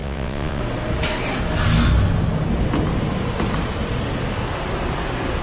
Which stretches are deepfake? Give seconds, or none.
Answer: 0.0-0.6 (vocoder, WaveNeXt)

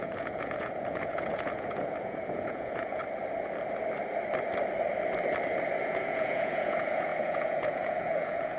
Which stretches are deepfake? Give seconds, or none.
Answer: 0.0-3.0 (vocoder, Vocos); 5.8-8.6

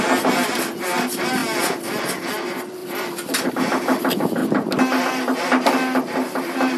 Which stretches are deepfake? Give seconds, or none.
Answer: 2.8-3.5 (vocoder, BigVGAN v2)